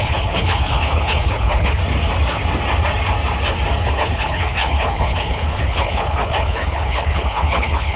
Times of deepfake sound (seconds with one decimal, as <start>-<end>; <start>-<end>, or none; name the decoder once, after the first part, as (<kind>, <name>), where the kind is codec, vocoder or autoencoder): 0.0-1.8 (codec, HILCodec); 3.9-8.0